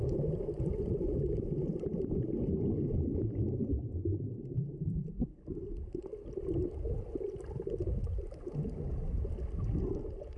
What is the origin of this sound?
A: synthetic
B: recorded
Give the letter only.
B